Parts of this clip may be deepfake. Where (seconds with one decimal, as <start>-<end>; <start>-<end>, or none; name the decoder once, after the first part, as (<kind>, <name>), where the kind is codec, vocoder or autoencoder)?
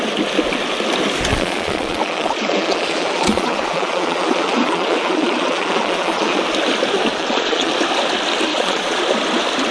1.3-6.4 (vocoder, Vocos); 7.1-7.7; 8.5-9.0